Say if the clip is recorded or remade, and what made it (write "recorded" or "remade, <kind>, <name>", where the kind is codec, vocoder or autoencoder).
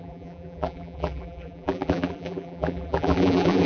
remade, vocoder, BigVGAN v2